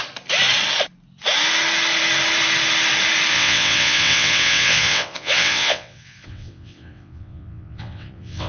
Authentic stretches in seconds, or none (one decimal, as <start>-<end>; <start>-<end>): 0.0-3.3